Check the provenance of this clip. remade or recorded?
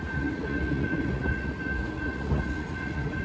remade